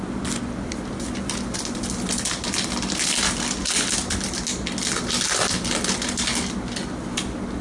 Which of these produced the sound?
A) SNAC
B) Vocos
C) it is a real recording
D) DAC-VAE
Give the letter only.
C